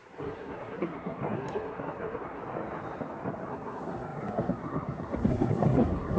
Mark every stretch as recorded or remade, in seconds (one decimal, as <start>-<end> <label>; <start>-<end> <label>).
0.0-2.4 remade; 2.4-3.5 recorded; 3.5-6.2 remade